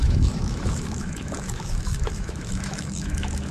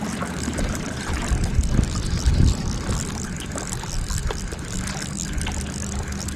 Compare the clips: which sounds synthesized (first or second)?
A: first